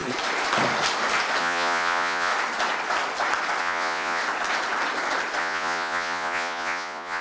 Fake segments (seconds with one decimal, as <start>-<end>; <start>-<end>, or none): 1.4-2.3; 3.6-4.2; 5.4-7.2